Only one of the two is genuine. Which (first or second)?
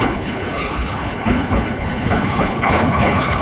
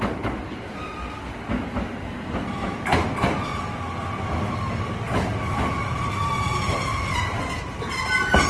second